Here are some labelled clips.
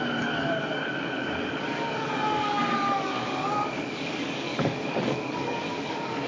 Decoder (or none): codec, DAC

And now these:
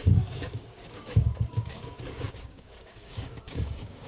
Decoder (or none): codec, DAC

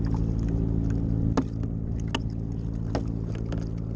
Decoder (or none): none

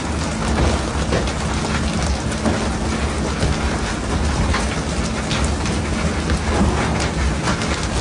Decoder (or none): none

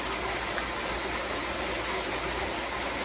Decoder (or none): none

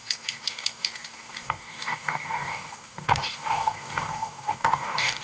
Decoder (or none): codec, DAC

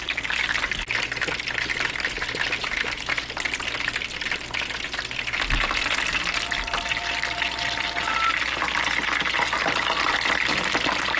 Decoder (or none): none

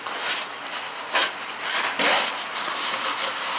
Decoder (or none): none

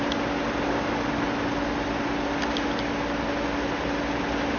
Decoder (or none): none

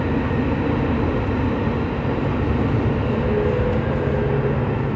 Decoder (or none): none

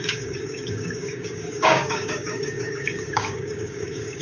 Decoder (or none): codec, DAC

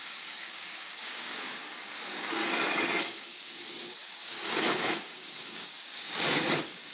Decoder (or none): codec, DAC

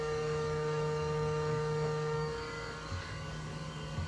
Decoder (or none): codec, DAC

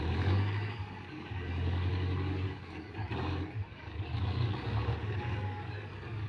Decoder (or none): codec, DAC